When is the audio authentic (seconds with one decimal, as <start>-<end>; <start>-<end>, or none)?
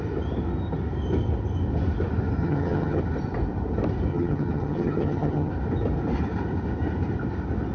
0.0-2.4; 3.0-4.1; 5.5-7.7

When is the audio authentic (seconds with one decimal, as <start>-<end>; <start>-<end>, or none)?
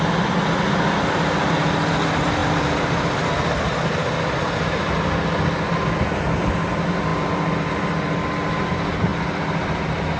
0.0-7.1; 7.7-10.2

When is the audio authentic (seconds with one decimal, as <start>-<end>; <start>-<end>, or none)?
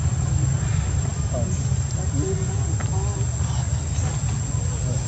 0.0-5.1